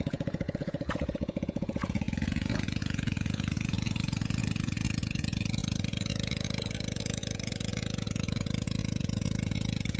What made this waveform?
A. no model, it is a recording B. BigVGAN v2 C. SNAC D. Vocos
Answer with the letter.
D